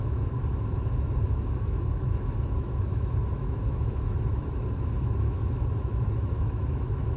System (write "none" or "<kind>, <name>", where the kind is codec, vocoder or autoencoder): autoencoder, DAC-VAE